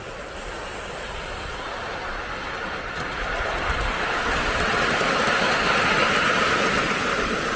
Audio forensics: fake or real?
real